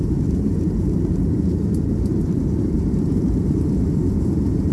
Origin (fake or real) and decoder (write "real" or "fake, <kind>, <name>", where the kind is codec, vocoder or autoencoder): fake, vocoder, BigVGAN v2